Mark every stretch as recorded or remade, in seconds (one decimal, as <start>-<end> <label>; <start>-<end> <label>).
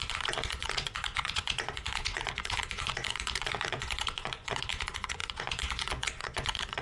0.0-6.8 remade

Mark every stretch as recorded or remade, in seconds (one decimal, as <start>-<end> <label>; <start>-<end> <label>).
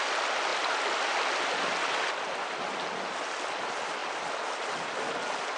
0.0-5.6 recorded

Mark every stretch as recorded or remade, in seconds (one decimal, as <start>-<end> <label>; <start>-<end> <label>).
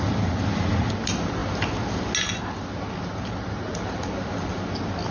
0.0-5.1 recorded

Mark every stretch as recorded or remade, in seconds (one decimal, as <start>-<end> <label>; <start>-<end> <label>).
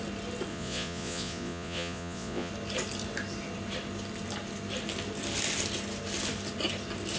0.0-0.5 recorded; 0.5-2.5 remade; 2.5-7.2 recorded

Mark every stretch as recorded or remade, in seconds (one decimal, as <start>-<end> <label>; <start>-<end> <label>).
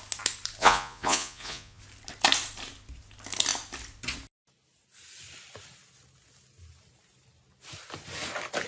0.0-0.6 recorded; 0.6-1.8 remade; 1.8-8.7 recorded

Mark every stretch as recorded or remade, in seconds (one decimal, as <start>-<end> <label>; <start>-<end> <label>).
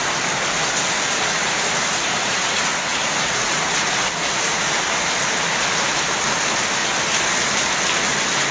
0.0-1.3 recorded; 1.3-4.7 remade; 4.7-8.5 recorded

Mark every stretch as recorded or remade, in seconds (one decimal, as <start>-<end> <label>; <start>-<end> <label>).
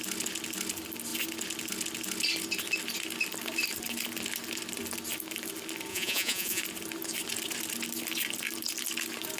0.0-5.9 recorded; 5.9-6.6 remade; 6.6-9.4 recorded